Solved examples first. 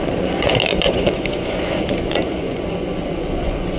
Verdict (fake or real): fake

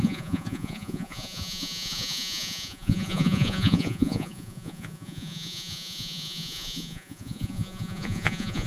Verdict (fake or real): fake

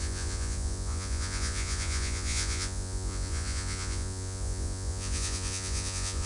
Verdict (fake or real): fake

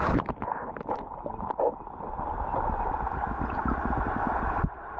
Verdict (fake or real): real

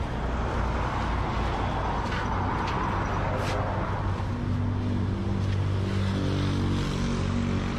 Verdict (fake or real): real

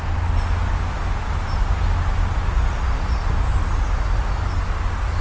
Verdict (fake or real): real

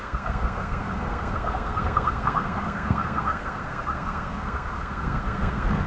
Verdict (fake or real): fake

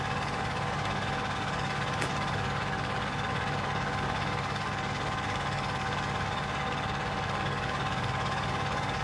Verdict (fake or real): fake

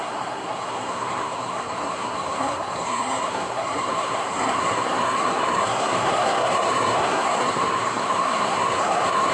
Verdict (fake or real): fake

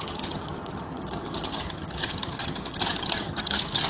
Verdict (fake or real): fake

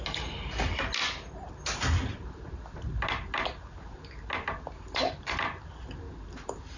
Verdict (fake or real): real